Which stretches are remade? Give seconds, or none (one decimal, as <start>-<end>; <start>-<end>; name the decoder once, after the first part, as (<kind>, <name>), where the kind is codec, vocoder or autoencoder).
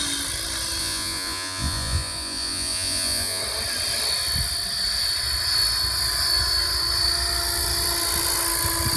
0.8-3.4 (vocoder, Vocos)